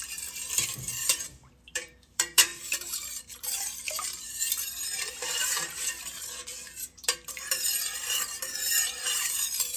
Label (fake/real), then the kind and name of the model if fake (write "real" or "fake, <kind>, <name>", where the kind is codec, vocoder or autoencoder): fake, vocoder, BigVGAN v2